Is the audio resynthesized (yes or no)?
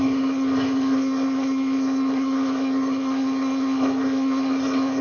yes